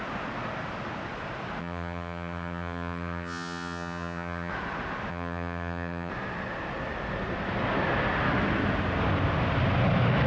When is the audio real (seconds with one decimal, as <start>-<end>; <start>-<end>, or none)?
0.0-1.6; 4.5-5.1; 6.1-10.3